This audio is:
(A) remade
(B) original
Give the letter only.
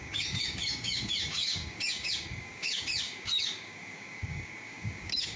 A